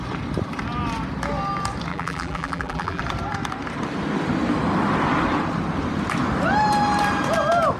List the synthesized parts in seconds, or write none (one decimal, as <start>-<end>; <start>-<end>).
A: 1.9-3.0

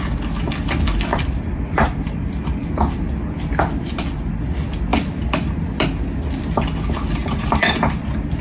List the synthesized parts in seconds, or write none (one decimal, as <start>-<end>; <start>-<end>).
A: 1.1-2.7; 7.2-7.7

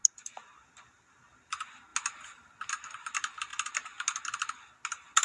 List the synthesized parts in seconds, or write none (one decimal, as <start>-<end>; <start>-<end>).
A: none

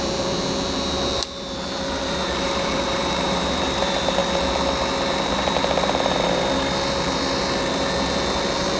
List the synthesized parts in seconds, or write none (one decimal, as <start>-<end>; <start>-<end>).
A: 0.0-4.2; 8.4-8.8

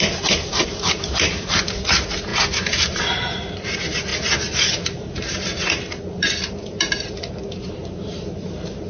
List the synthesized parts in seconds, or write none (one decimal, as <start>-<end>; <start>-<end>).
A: 0.0-8.9

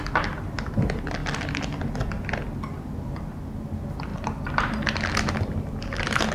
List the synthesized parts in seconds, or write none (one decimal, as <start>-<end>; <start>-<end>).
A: 1.2-1.9; 4.1-6.3

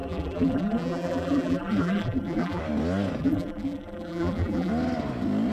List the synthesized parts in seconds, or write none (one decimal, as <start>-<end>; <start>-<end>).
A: 0.0-2.6; 3.2-4.7

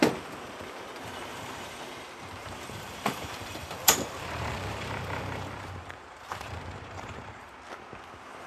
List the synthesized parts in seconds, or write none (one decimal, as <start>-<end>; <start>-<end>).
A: 1.3-1.8; 2.4-7.5